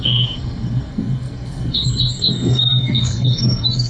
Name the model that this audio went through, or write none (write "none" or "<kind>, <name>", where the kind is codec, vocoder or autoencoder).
codec, SNAC